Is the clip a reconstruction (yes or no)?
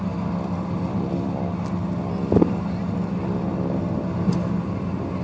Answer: no